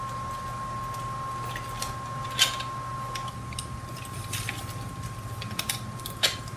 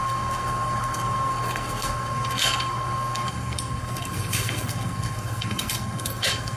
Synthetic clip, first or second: second